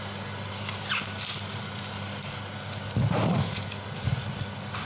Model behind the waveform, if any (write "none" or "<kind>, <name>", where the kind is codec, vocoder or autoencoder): none